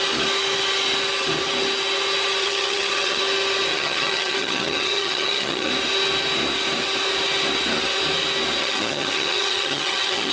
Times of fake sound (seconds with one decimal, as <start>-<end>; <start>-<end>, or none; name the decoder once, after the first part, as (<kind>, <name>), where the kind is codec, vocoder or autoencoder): 2.4-3.2 (vocoder, HiFi-GAN); 3.7-5.7; 8.6-10.3